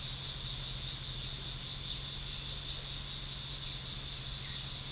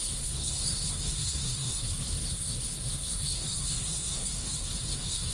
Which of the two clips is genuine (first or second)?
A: first